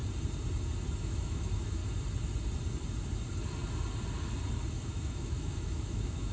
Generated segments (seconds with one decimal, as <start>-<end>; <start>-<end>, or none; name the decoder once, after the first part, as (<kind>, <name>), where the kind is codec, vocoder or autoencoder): 1.0-1.8 (autoencoder, DAC-VAE); 4.7-6.3